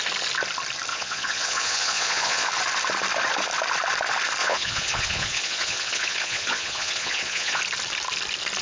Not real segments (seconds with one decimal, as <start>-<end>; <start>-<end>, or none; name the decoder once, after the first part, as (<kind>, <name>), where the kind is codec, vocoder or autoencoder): 0.9-2.5 (vocoder, Vocos); 4.4-7.6